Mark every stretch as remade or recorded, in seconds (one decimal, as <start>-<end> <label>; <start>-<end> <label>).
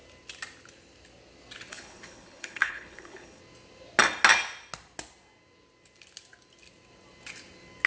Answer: 0.0-1.7 recorded; 1.7-3.4 remade; 3.4-7.9 recorded